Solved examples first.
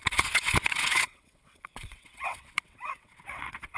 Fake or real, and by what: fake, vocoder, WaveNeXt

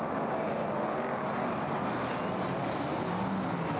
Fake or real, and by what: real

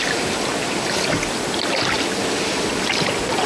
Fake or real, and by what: real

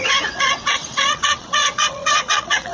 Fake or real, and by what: fake, vocoder, WaveNeXt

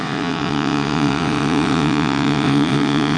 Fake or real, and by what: fake, vocoder, WaveNeXt